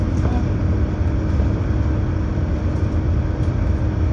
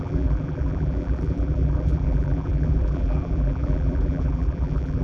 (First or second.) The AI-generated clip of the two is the second